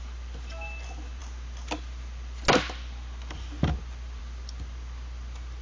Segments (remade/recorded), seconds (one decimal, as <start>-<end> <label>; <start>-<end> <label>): 0.0-5.6 recorded